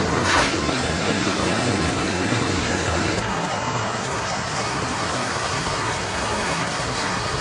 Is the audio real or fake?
fake